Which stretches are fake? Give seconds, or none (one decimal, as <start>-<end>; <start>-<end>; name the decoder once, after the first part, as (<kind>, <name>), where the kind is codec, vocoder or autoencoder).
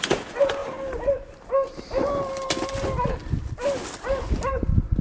none